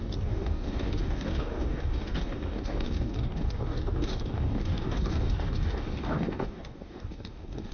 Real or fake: fake